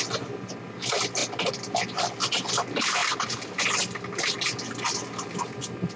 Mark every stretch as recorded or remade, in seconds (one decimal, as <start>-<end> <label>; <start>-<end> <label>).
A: 0.0-6.0 recorded